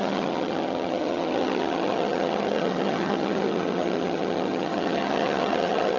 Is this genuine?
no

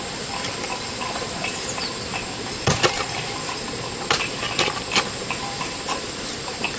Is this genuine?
yes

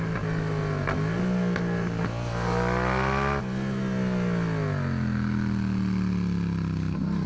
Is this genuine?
yes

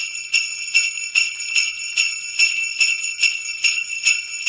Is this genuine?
no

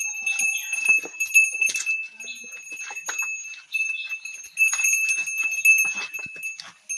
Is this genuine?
yes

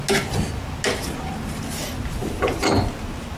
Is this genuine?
yes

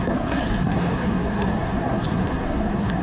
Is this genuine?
no